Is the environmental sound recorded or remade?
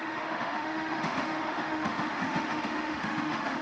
remade